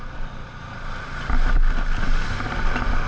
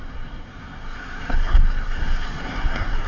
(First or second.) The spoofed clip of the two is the second